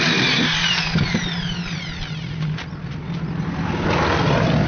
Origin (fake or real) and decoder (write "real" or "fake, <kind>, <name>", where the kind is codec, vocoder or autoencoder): fake, vocoder, BigVGAN v2